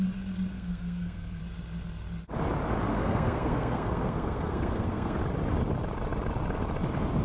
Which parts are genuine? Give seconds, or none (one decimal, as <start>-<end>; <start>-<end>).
0.0-0.5; 1.4-2.9; 5.2-7.2